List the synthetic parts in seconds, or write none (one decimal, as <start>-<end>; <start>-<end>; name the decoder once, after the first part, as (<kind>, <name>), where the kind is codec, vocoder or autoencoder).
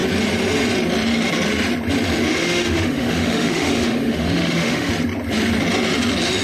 2.4-4.9 (autoencoder, DAC-VAE)